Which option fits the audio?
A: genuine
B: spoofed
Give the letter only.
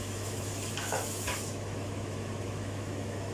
B